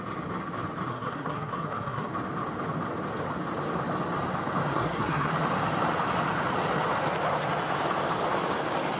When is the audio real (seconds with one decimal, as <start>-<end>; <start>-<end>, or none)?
0.0-0.9; 2.1-4.7; 5.3-9.0